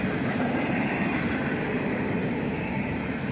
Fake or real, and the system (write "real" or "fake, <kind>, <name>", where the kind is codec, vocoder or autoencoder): fake, vocoder, BigVGAN v2